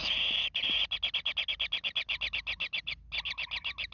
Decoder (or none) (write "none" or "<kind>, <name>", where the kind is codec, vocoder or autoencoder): none